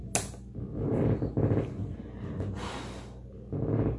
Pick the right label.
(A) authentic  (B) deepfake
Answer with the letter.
A